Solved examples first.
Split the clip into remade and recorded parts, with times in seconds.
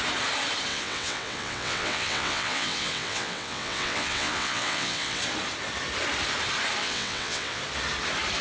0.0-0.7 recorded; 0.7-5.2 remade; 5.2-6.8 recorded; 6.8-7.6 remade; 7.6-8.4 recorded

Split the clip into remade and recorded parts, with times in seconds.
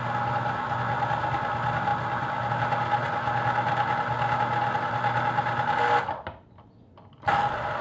0.0-7.8 recorded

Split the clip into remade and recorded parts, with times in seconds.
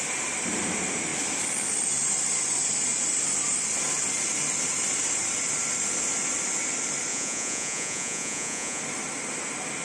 0.0-7.1 recorded; 7.1-8.8 remade; 8.8-9.8 recorded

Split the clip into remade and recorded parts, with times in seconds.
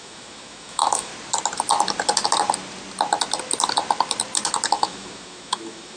0.0-1.1 remade; 1.1-4.7 recorded; 4.7-6.0 remade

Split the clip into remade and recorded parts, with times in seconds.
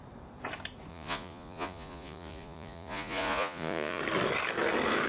0.0-0.9 recorded; 0.9-4.0 remade; 4.0-5.1 recorded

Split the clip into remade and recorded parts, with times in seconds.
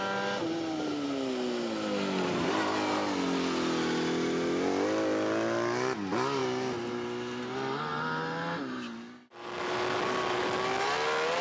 0.0-11.4 recorded